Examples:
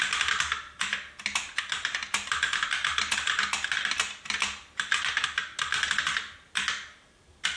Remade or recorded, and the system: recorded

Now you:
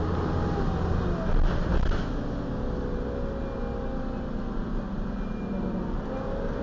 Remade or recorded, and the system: recorded